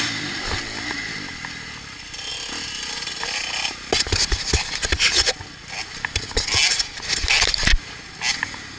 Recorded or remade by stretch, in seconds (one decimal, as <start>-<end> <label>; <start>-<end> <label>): 0.0-8.8 recorded